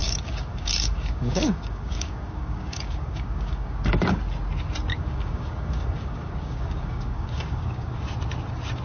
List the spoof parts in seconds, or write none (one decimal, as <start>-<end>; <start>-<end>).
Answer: 0.0-4.2; 4.9-8.0